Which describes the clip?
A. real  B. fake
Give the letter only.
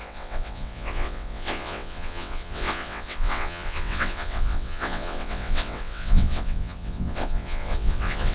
B